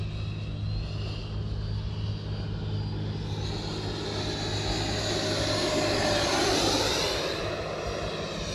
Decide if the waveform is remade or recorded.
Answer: recorded